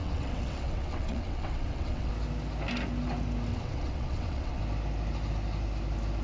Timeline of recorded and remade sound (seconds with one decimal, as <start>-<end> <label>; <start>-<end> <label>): 0.0-2.1 remade; 2.1-3.5 recorded; 3.5-4.6 remade; 4.6-6.2 recorded